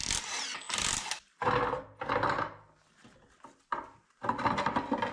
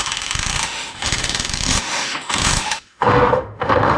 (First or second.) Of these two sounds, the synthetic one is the second